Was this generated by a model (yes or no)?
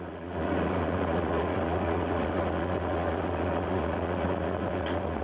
yes